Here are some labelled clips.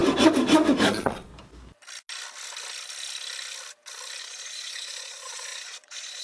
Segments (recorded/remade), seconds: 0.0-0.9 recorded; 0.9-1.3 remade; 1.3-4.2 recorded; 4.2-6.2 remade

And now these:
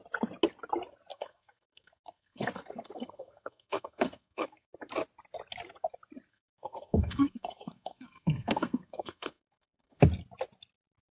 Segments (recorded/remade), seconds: 0.0-1.1 recorded; 1.1-4.7 remade; 4.7-6.3 recorded; 6.3-10.0 remade; 10.0-11.2 recorded

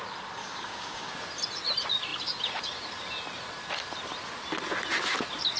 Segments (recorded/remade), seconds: 0.0-0.4 recorded; 0.4-1.1 remade; 1.1-5.6 recorded

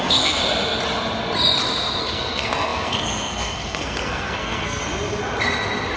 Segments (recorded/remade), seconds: 0.0-0.4 remade; 0.4-2.0 recorded; 2.0-4.8 remade; 4.8-6.0 recorded